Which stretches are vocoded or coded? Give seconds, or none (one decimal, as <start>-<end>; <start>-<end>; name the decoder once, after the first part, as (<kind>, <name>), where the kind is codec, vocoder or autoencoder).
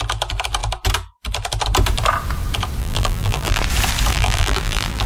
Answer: 2.8-3.6 (vocoder, BigVGAN v2); 4.1-5.1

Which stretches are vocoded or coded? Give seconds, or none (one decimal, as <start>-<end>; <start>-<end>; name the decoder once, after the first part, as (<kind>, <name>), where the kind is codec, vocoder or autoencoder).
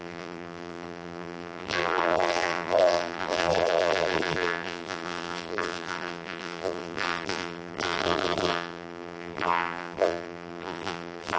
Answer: 0.0-11.4 (vocoder, BigVGAN v2)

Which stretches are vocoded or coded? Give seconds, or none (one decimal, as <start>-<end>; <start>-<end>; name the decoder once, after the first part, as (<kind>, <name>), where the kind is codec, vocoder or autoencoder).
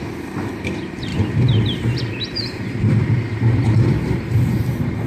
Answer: 1.1-4.2 (vocoder, BigVGAN v2)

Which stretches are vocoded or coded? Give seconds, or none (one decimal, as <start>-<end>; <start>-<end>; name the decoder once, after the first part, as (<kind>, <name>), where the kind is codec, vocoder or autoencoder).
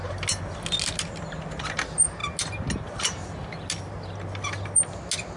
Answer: none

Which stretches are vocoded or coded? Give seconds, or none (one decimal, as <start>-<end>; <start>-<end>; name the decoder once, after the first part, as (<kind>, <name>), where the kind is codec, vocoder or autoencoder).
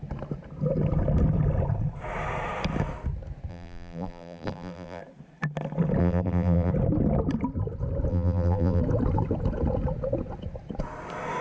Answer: 3.5-5.0 (vocoder, BigVGAN v2); 6.0-6.7; 8.1-8.8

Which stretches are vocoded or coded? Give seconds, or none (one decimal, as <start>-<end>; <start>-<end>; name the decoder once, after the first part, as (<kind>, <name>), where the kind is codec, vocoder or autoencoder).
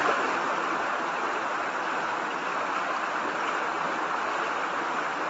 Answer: 0.0-2.3 (vocoder, BigVGAN v2); 4.6-5.3